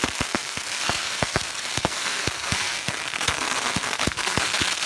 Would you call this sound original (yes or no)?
no